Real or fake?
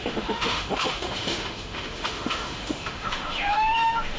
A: fake